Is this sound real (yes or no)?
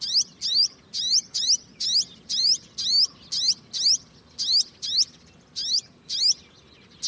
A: yes